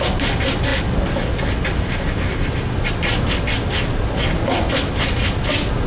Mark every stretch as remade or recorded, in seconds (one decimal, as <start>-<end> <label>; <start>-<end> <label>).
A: 0.0-5.9 recorded